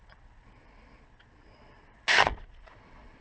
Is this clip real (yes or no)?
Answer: no